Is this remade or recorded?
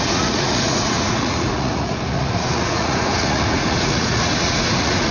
remade